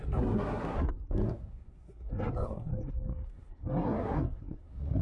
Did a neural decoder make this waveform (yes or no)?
yes